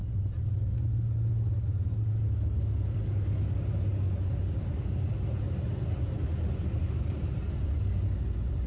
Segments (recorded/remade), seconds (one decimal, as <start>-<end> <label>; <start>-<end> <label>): 0.0-8.7 recorded